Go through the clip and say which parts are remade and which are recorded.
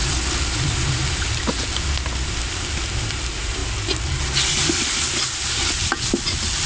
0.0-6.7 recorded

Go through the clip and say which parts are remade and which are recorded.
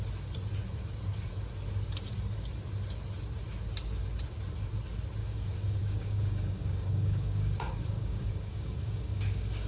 0.0-5.2 recorded; 5.2-9.7 remade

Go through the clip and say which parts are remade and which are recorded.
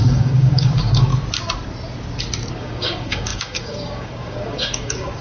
0.0-1.1 remade; 1.1-2.5 recorded; 2.5-5.2 remade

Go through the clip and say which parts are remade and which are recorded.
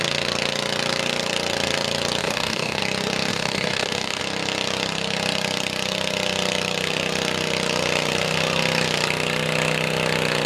0.0-2.2 recorded; 2.2-2.8 remade; 2.8-3.3 recorded; 3.3-4.2 remade; 4.2-10.5 recorded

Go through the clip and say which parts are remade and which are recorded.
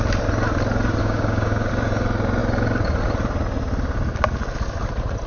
0.0-1.0 recorded; 1.0-1.7 remade; 1.7-5.3 recorded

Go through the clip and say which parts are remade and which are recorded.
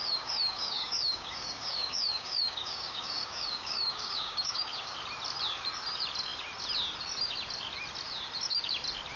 0.0-4.9 remade; 4.9-9.2 recorded